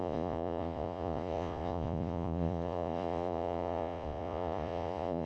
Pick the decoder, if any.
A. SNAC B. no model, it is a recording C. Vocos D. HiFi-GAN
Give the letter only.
C